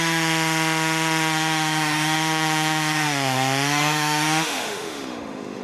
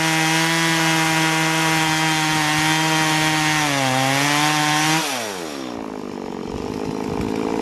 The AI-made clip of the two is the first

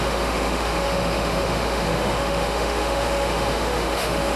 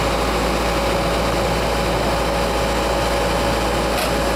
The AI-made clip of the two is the first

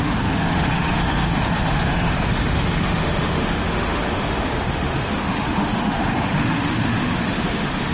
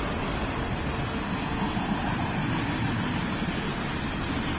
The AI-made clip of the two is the first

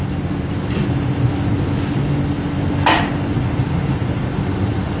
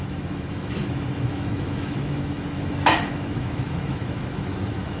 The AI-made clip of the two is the second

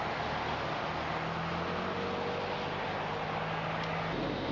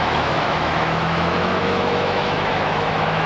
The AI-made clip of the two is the second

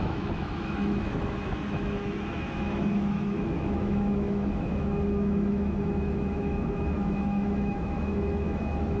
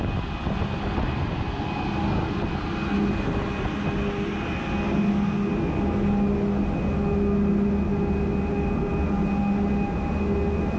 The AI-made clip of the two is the first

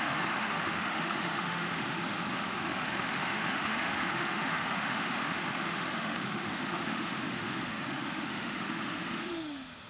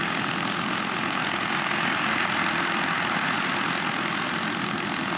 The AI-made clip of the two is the first